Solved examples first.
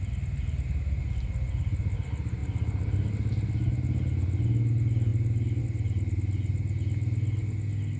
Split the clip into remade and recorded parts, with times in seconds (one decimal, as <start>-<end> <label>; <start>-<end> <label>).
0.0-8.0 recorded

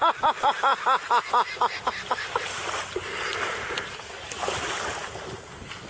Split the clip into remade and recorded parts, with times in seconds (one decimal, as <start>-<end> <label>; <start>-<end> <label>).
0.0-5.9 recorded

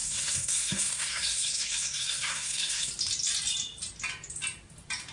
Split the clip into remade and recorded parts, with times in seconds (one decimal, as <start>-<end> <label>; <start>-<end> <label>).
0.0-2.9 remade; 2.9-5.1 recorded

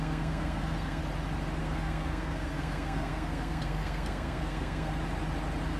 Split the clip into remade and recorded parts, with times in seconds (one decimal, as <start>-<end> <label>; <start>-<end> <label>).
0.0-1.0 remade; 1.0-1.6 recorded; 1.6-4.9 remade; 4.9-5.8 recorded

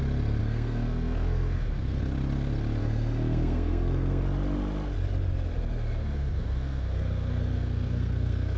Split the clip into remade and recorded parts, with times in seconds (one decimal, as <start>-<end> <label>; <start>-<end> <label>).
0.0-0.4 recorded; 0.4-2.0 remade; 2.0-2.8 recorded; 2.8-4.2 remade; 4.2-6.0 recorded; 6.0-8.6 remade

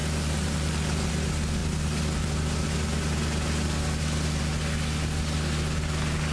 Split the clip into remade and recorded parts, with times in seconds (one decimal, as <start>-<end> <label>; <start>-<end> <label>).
0.0-6.3 recorded

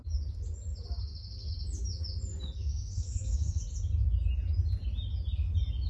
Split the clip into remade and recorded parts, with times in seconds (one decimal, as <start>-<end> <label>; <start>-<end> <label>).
0.0-2.7 recorded; 2.7-3.6 remade; 3.6-5.9 recorded

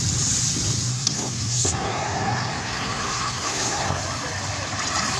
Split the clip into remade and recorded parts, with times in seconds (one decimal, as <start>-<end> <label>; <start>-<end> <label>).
0.0-0.9 recorded; 0.9-4.0 remade; 4.0-5.2 recorded